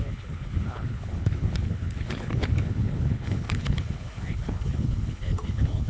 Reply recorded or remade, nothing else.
remade